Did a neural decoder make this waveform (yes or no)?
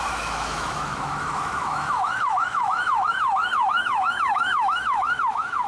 yes